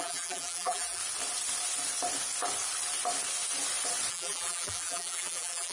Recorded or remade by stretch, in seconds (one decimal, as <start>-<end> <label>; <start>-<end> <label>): 0.0-1.0 remade; 1.0-4.1 recorded; 4.1-5.7 remade